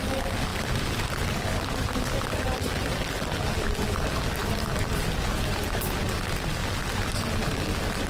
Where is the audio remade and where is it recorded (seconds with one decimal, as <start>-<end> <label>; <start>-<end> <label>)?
0.0-8.1 recorded